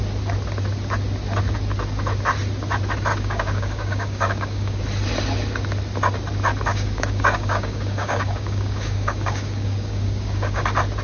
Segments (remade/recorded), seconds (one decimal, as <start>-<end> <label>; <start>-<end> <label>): 0.0-3.1 recorded; 3.1-4.8 remade; 4.8-6.7 recorded; 6.7-10.6 remade; 10.6-11.0 recorded